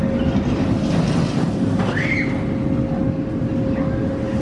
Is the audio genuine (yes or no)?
yes